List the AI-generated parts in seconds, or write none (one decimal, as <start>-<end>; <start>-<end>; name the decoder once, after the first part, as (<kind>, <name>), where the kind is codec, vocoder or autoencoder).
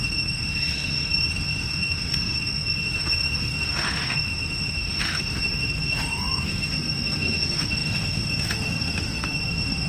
0.0-9.9 (autoencoder, DAC-VAE)